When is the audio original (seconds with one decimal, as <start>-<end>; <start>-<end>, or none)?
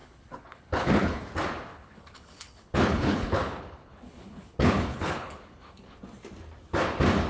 1.2-1.7; 6.0-7.3